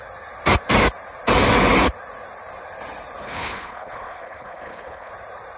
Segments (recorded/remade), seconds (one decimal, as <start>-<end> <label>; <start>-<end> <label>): 0.0-3.2 recorded; 3.2-5.1 remade; 5.1-5.6 recorded